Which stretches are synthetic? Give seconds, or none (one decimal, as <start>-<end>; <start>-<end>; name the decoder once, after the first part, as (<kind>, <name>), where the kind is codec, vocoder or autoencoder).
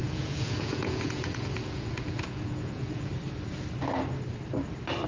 0.0-3.1 (vocoder, Vocos)